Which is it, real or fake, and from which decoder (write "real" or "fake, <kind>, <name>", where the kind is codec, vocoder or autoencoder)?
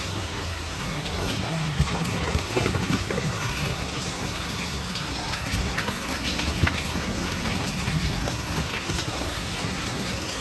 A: fake, codec, SNAC